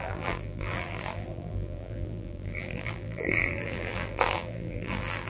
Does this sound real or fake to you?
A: fake